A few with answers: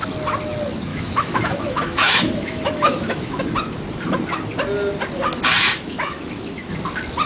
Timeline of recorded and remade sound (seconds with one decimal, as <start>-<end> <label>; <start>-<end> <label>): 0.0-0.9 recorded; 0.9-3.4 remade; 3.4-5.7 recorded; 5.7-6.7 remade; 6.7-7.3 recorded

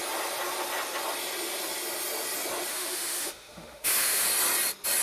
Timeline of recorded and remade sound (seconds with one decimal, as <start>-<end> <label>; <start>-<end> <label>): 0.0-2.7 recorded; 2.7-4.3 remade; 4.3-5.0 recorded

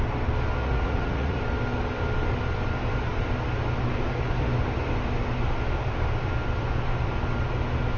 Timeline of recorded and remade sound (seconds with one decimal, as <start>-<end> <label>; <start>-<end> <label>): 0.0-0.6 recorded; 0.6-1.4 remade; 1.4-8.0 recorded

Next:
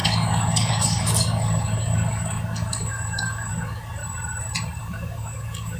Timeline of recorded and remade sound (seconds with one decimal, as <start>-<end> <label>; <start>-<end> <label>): 0.0-4.0 remade; 4.0-4.8 recorded; 4.8-5.8 remade